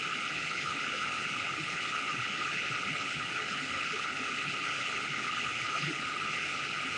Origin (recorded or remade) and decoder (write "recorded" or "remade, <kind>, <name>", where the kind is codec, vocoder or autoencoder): remade, codec, HILCodec